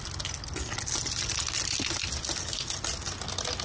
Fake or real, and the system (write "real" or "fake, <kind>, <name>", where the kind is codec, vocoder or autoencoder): real